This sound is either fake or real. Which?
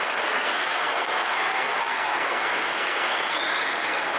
fake